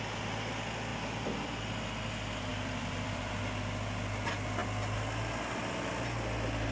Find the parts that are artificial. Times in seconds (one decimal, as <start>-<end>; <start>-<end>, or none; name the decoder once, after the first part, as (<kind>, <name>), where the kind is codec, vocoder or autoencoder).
0.9-1.6 (vocoder, BigVGAN v2); 2.5-3.4

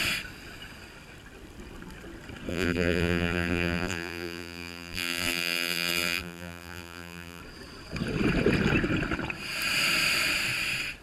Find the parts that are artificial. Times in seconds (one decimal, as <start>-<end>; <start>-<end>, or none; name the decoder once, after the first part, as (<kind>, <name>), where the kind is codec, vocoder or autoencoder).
2.5-7.4 (vocoder, BigVGAN v2)

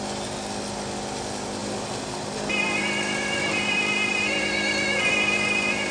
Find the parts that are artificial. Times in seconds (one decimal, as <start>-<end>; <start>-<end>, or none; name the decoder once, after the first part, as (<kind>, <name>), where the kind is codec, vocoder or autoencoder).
none

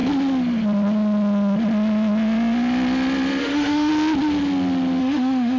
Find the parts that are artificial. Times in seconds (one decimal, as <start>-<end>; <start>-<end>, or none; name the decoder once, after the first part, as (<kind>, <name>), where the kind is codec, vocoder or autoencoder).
3.4-3.9 (autoencoder, DAC-VAE); 5.0-5.6

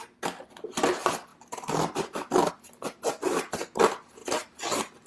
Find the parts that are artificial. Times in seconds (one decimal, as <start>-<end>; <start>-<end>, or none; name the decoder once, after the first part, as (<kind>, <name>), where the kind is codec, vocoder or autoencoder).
1.3-2.5 (vocoder, BigVGAN v2)